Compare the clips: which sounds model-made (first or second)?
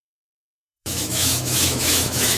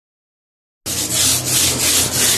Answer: first